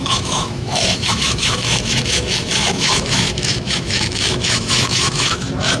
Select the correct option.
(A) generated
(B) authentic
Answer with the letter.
A